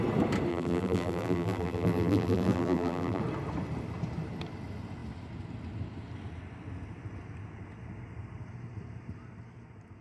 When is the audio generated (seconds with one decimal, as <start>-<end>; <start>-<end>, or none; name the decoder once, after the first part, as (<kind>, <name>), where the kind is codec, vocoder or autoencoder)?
0.5-3.2 (vocoder, BigVGAN v2)